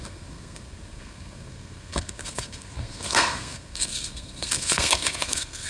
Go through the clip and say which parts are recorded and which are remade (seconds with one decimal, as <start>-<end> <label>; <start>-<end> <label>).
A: 0.0-5.7 remade